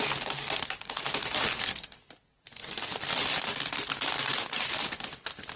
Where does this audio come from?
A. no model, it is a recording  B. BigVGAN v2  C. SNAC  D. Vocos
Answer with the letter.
A